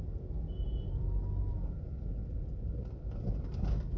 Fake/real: real